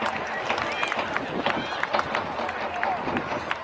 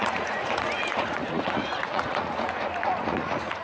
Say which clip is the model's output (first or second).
second